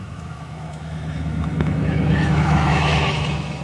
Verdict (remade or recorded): remade